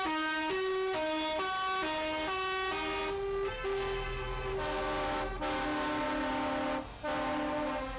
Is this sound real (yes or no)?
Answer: yes